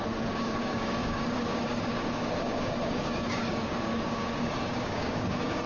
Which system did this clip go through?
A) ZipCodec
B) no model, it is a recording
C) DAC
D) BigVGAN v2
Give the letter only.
C